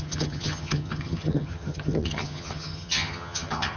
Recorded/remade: remade